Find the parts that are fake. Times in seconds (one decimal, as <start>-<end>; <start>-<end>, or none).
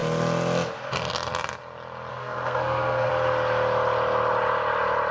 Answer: 2.1-3.1